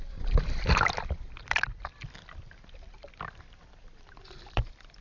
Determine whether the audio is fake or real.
fake